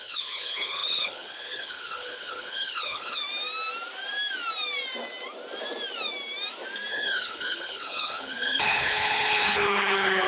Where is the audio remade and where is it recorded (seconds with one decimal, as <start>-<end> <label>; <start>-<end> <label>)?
0.0-3.2 remade; 3.2-6.9 recorded; 6.9-10.3 remade